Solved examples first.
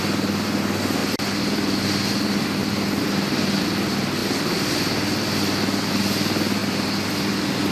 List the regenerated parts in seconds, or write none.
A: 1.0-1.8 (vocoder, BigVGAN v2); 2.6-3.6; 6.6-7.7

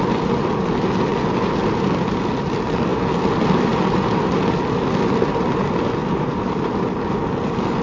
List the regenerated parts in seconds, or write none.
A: none